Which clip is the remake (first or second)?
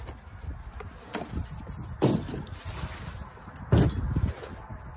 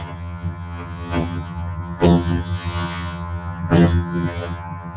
second